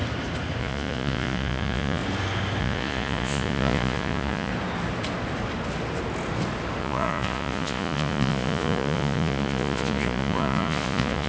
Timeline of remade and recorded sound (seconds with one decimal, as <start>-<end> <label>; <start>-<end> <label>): 0.0-0.6 recorded; 0.6-2.0 remade; 2.0-2.6 recorded; 2.6-4.5 remade; 4.5-6.8 recorded; 6.8-11.3 remade